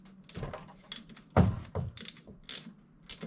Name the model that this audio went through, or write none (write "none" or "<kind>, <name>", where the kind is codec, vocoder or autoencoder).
none